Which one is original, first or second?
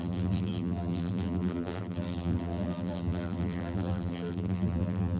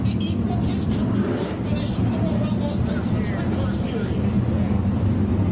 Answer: second